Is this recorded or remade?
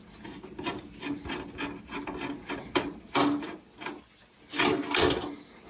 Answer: recorded